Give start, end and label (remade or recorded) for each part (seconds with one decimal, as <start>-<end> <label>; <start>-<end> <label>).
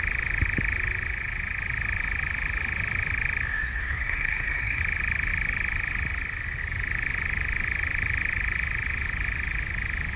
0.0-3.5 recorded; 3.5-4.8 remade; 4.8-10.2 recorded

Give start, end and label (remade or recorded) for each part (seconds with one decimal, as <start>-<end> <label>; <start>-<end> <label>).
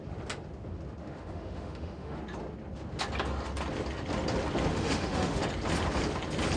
0.0-1.0 recorded; 1.0-2.2 remade; 2.2-4.7 recorded; 4.7-5.4 remade; 5.4-6.6 recorded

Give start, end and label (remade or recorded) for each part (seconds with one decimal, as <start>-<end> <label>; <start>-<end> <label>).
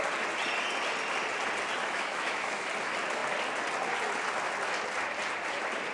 0.0-1.8 recorded; 1.8-2.7 remade; 2.7-5.9 recorded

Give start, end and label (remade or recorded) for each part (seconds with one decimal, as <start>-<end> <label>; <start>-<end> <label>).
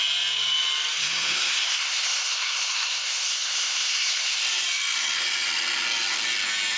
0.0-1.0 recorded; 1.0-4.4 remade; 4.4-6.8 recorded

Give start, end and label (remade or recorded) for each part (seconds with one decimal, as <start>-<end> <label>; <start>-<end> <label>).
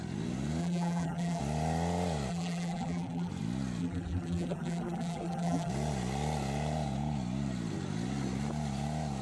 0.0-0.6 recorded; 0.6-1.4 remade; 1.4-2.3 recorded; 2.3-3.3 remade; 3.3-3.8 recorded; 3.8-5.7 remade; 5.7-9.2 recorded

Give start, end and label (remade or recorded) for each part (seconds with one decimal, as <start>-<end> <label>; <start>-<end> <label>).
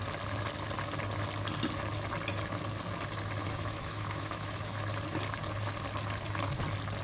0.0-3.4 recorded; 3.4-4.8 remade; 4.8-7.0 recorded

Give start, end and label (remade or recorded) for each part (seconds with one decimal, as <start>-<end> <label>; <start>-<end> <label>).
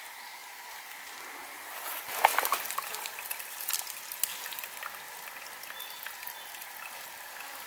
0.0-2.3 recorded; 2.3-4.0 remade; 4.0-7.7 recorded